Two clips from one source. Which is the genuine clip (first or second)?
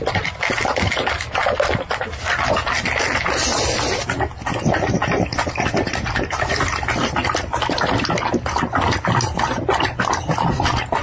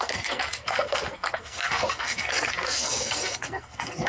first